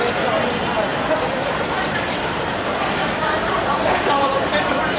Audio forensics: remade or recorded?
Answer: remade